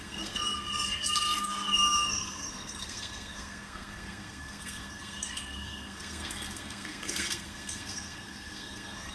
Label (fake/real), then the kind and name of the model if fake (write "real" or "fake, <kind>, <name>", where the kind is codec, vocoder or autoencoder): fake, codec, SNAC